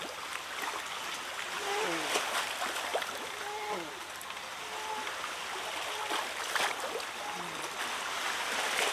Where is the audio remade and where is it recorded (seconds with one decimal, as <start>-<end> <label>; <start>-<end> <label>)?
0.0-8.9 recorded